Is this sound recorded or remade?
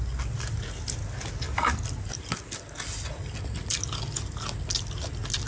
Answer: recorded